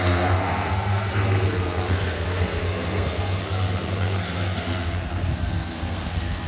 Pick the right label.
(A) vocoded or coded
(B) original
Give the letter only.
A